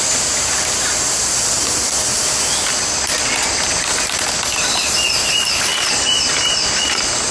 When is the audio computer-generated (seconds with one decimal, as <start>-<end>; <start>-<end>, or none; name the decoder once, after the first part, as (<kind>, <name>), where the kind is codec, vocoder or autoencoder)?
none